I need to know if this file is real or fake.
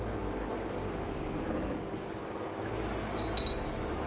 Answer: real